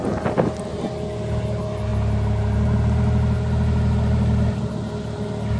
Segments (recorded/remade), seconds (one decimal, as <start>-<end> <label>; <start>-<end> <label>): 0.0-5.6 recorded